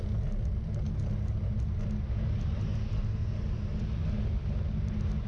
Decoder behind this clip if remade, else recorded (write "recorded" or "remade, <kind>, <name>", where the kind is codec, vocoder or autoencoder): recorded